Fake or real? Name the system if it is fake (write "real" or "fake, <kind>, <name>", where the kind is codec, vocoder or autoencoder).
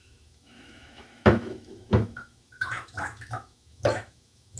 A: fake, autoencoder, DAC-VAE